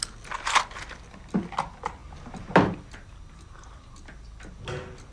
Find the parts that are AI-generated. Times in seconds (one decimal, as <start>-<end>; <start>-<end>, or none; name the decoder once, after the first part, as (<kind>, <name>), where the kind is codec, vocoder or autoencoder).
none